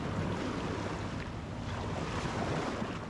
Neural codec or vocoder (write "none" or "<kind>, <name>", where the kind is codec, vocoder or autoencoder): none